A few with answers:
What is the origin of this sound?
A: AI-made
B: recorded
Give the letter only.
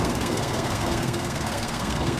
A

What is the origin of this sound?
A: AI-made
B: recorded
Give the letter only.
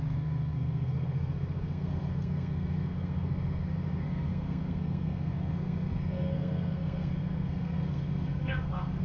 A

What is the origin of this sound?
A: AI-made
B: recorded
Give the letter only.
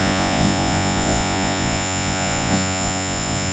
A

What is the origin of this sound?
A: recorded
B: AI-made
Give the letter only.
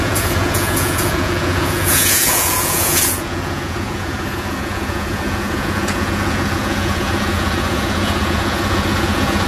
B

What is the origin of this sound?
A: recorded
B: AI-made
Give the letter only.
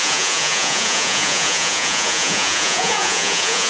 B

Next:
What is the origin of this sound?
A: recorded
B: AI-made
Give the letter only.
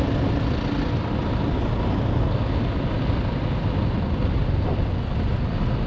A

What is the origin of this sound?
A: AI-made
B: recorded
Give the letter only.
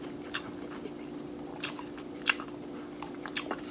B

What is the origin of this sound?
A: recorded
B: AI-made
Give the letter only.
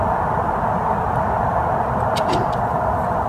B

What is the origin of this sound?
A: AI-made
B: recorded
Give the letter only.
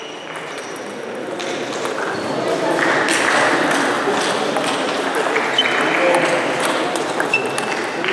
B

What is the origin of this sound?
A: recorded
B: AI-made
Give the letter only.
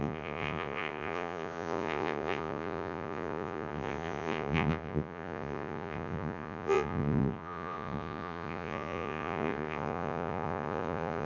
B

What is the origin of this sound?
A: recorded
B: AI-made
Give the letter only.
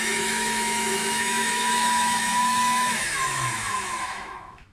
B